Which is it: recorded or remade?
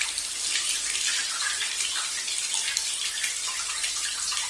recorded